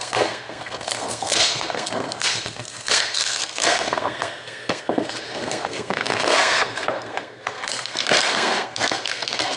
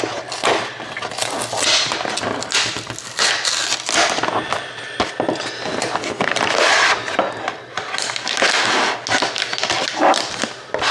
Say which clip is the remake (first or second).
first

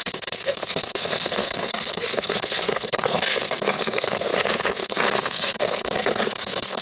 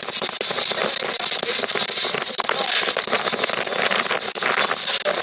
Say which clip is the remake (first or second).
first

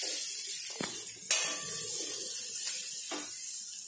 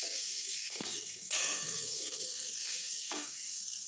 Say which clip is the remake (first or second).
second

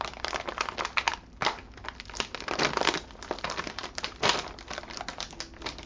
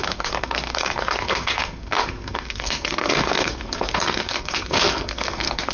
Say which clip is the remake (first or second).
second